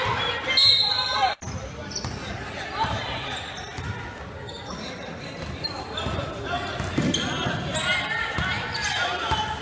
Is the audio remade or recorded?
recorded